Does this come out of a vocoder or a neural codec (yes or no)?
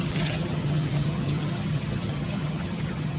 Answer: yes